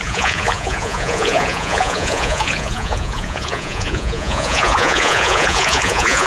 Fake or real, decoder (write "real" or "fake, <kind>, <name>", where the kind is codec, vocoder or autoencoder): fake, vocoder, Vocos